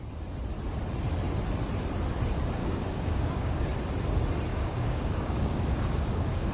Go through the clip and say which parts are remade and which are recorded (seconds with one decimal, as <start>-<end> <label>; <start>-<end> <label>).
0.0-2.6 recorded; 2.6-3.6 remade; 3.6-4.5 recorded; 4.5-6.5 remade